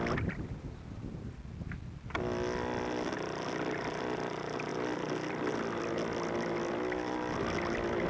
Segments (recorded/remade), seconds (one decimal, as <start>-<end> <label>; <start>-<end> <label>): 0.0-8.1 recorded